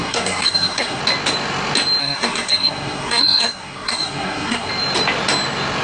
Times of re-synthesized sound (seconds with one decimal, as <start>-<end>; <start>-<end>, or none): 0.0-1.0; 2.0-4.7